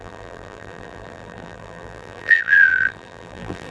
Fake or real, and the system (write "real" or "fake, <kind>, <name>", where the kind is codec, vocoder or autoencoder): fake, vocoder, BigVGAN v2